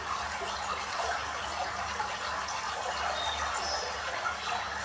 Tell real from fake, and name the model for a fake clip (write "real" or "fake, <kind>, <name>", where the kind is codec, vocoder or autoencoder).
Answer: real